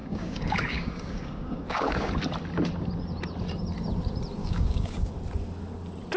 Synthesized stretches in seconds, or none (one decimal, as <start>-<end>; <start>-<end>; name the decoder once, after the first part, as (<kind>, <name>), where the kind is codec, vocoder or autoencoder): 0.0-2.1 (codec, DAC); 4.4-5.1